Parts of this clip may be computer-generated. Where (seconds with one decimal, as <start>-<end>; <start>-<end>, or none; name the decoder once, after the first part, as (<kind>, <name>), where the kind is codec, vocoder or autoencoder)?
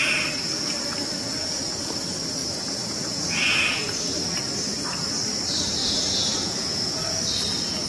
1.4-1.9 (vocoder, Vocos); 2.4-3.9; 5.8-7.2